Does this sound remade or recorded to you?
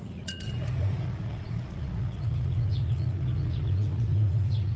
remade